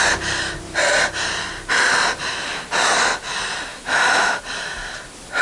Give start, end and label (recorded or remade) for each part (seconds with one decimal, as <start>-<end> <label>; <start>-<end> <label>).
0.0-3.7 recorded; 3.7-4.4 remade; 4.4-5.4 recorded